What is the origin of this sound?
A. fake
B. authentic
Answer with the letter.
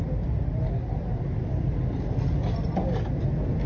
A